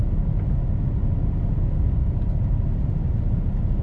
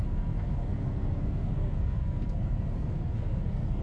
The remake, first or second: second